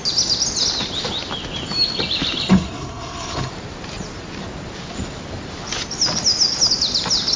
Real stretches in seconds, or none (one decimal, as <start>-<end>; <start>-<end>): 0.0-2.5; 3.5-7.4